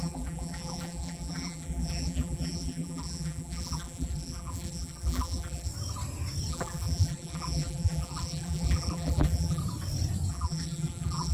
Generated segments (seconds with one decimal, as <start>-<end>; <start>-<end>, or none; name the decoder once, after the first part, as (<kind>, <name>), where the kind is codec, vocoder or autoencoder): 0.0-5.7 (vocoder, BigVGAN v2); 6.5-9.6; 10.3-11.3